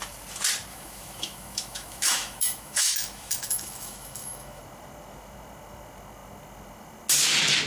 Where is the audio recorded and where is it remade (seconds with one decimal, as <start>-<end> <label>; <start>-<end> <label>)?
0.0-0.7 recorded; 0.7-4.6 remade; 4.6-7.7 recorded